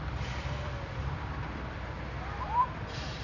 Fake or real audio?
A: fake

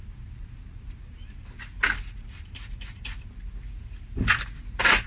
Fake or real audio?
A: fake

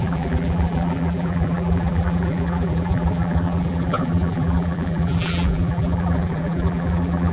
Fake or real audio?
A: fake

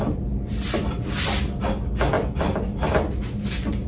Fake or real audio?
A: real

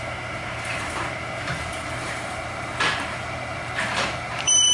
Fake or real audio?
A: fake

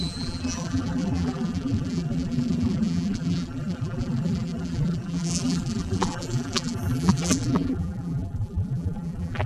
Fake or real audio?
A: fake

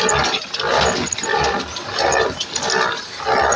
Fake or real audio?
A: real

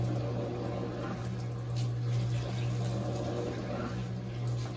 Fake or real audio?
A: real